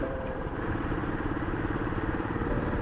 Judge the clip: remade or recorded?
remade